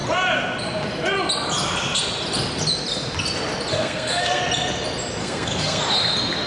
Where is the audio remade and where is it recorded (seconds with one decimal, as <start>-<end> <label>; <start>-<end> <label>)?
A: 0.0-3.7 recorded; 3.7-4.4 remade; 4.4-5.2 recorded; 5.2-5.8 remade; 5.8-6.5 recorded